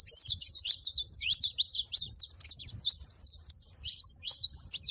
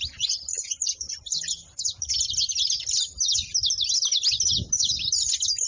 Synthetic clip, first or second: first